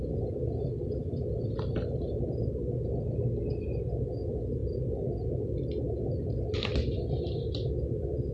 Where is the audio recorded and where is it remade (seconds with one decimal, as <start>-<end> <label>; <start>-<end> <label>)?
0.0-8.3 recorded